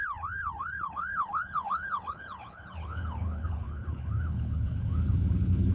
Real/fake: fake